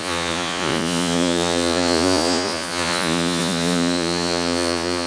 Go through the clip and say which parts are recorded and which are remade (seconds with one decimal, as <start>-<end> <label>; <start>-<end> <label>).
0.0-5.1 remade